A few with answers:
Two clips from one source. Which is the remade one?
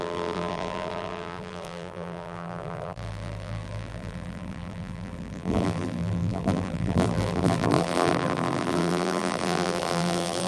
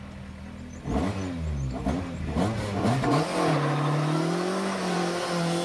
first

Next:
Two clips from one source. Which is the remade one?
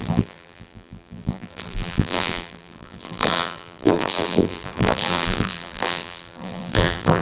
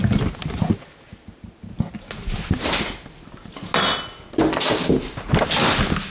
first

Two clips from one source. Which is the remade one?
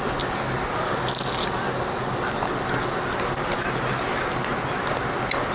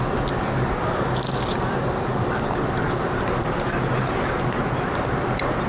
second